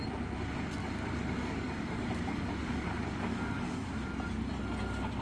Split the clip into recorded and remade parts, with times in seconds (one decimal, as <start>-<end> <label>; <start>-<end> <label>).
0.0-0.8 recorded; 0.8-3.9 remade; 3.9-5.2 recorded